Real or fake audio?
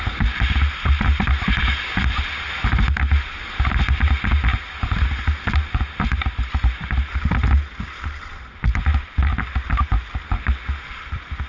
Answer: real